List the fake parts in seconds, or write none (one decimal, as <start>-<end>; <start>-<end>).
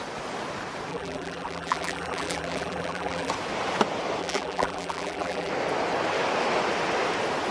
0.9-3.3; 4.2-5.5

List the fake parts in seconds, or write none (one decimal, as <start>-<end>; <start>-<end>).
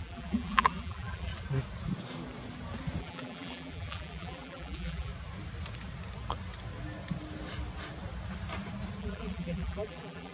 0.0-1.3; 3.0-5.1; 9.0-10.3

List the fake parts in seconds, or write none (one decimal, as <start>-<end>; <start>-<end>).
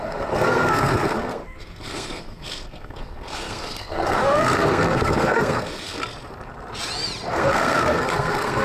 0.0-6.0; 7.3-8.6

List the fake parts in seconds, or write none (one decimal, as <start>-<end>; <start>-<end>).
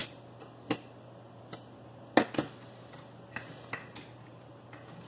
none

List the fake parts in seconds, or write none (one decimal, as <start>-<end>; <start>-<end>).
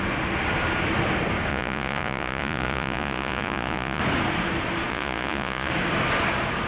1.5-4.0; 4.9-5.7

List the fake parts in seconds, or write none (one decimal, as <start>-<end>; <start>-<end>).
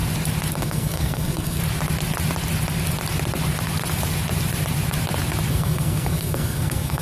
0.5-1.6; 5.5-7.0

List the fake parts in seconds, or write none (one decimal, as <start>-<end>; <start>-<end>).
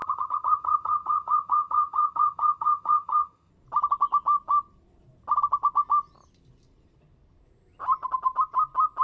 0.0-3.5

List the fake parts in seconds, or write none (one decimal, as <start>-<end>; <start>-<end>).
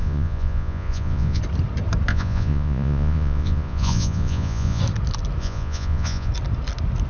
0.0-1.4; 2.1-4.8; 5.4-6.3